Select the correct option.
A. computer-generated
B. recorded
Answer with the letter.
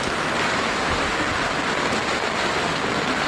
B